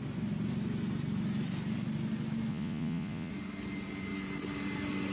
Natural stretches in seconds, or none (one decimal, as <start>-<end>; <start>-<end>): 0.0-2.5; 3.3-5.1